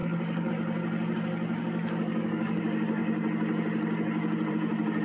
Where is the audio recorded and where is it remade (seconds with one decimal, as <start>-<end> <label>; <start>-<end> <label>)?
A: 0.0-0.5 remade; 0.5-1.6 recorded; 1.6-2.6 remade; 2.6-5.0 recorded